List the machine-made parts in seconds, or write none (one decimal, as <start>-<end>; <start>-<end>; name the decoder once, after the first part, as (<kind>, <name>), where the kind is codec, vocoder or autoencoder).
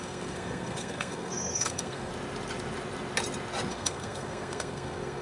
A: 0.0-2.1 (codec, SNAC); 3.7-5.2